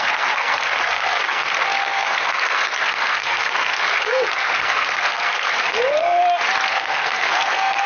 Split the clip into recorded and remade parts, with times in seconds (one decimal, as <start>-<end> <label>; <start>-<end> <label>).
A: 0.0-6.2 remade; 6.2-6.7 recorded; 6.7-7.9 remade